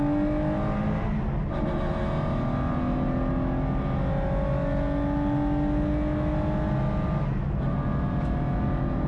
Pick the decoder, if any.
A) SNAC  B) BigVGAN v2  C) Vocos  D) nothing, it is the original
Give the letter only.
D